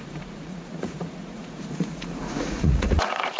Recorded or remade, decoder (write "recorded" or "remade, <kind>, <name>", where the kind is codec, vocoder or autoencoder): remade, vocoder, Vocos